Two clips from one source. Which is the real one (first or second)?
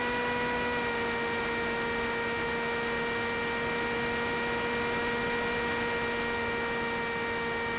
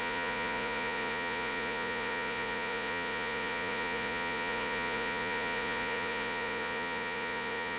first